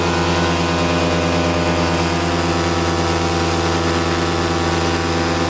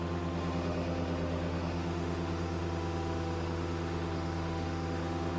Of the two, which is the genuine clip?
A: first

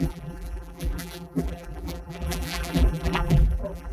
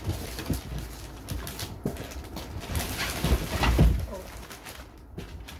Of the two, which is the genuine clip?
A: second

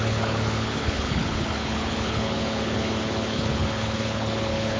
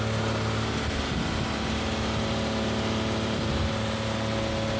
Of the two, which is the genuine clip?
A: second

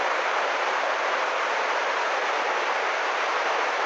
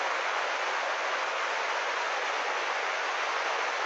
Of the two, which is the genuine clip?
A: first